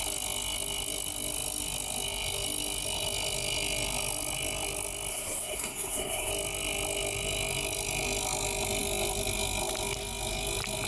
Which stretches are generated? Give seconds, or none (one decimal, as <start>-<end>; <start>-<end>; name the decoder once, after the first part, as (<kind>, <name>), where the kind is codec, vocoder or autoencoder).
5.1-6.3 (codec, SNAC)